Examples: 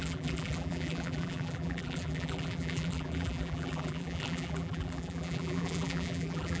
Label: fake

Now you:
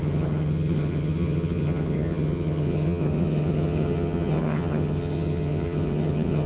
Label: fake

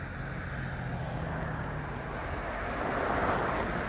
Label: real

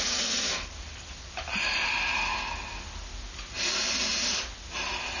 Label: real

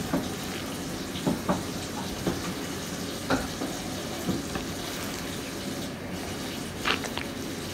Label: real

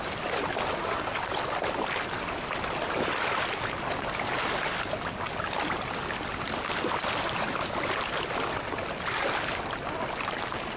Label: real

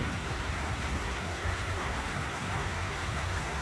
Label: fake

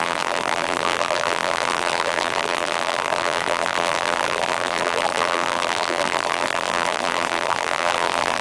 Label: fake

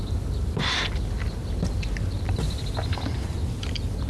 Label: real